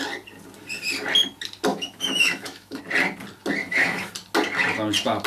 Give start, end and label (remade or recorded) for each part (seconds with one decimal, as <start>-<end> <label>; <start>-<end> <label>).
0.0-1.7 recorded; 1.7-2.8 remade; 2.8-3.6 recorded; 3.6-4.1 remade; 4.1-5.3 recorded